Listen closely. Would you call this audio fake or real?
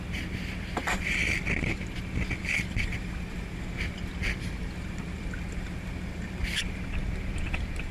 real